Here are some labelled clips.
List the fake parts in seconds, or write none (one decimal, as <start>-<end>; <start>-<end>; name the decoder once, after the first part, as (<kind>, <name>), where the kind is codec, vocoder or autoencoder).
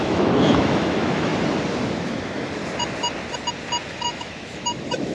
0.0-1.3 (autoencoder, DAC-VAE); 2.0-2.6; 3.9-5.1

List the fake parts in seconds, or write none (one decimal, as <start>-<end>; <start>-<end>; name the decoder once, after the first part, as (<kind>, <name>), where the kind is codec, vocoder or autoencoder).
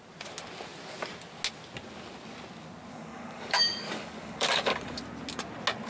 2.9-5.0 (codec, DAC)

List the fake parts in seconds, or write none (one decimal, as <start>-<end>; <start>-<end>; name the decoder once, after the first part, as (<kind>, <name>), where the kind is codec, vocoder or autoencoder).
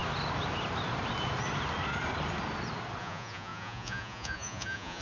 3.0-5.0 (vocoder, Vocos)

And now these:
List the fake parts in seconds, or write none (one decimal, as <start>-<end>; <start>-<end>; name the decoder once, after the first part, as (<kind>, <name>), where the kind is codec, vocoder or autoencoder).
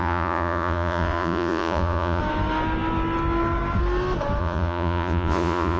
0.0-2.2 (vocoder, Vocos); 4.4-5.8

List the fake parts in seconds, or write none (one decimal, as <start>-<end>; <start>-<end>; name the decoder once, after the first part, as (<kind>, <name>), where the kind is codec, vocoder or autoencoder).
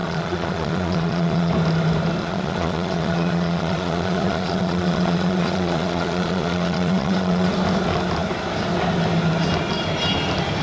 0.0-1.5 (vocoder, Vocos); 2.2-7.5